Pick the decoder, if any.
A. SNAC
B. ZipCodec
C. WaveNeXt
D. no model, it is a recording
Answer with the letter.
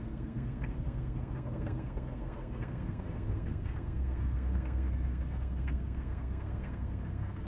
A